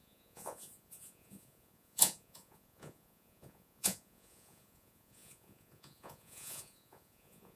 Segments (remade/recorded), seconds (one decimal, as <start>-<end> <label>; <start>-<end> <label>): 0.0-7.6 remade